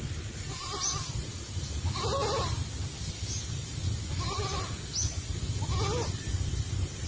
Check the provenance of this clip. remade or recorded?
recorded